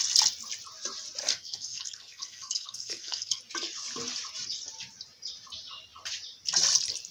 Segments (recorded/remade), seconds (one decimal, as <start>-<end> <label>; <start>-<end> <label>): 0.0-1.2 recorded; 1.2-3.4 remade; 3.4-7.1 recorded

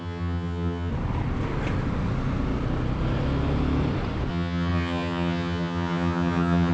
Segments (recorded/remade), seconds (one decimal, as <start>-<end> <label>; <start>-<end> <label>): 0.0-0.9 remade; 0.9-4.3 recorded; 4.3-6.7 remade

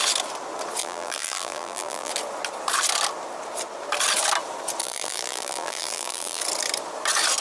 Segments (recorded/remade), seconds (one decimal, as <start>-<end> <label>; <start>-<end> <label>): 0.0-0.8 recorded; 0.8-2.1 remade; 2.1-4.8 recorded; 4.8-6.4 remade; 6.4-7.4 recorded

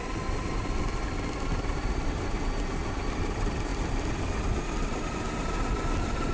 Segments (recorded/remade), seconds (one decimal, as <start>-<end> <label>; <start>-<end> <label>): 0.0-6.3 recorded

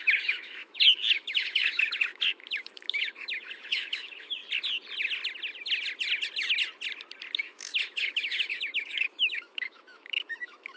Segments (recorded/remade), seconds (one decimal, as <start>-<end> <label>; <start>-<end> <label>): 0.0-4.4 remade; 4.4-7.4 recorded; 7.4-10.8 remade

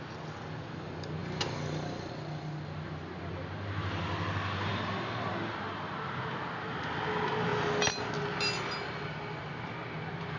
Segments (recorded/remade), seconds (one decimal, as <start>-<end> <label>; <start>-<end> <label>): 0.0-10.4 recorded

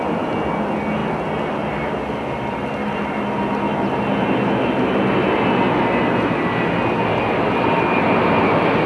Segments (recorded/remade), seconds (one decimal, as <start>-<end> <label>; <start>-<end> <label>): 0.0-8.9 recorded